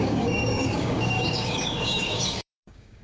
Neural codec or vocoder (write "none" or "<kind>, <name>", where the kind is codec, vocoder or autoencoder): codec, DAC